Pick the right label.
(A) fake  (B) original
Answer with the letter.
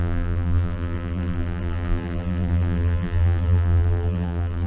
A